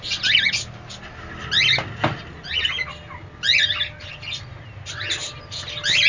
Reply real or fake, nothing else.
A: real